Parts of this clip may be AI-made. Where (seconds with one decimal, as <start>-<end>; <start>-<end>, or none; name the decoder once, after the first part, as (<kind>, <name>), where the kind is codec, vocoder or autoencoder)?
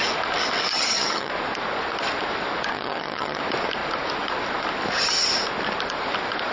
0.7-1.3 (vocoder, HiFi-GAN); 2.7-3.4